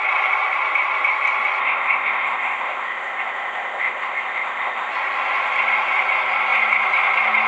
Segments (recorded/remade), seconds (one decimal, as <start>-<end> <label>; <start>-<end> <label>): 0.0-1.6 recorded; 1.6-4.9 remade; 4.9-7.5 recorded